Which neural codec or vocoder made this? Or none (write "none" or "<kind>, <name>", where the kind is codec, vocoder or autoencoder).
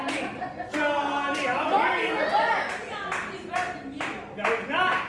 none